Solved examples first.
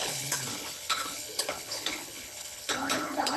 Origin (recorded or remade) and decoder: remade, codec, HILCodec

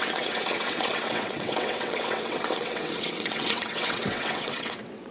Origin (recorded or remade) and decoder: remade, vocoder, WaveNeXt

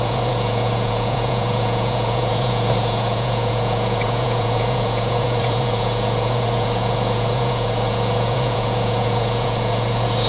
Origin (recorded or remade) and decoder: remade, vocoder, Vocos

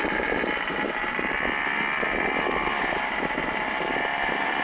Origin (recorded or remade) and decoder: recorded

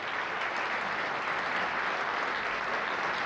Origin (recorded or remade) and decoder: recorded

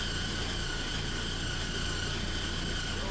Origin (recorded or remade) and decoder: recorded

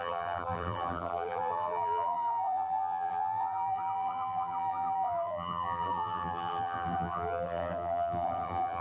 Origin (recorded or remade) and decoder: remade, vocoder, BigVGAN v2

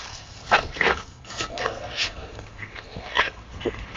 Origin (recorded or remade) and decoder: remade, codec, SNAC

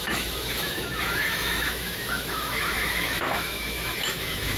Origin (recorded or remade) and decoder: remade, autoencoder, DAC-VAE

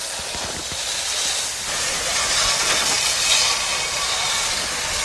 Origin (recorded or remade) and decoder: recorded